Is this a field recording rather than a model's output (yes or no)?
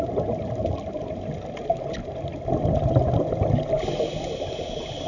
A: yes